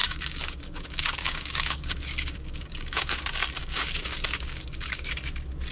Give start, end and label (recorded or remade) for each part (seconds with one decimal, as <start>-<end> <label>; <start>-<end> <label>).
0.0-3.1 remade; 3.1-3.6 recorded; 3.6-5.1 remade; 5.1-5.7 recorded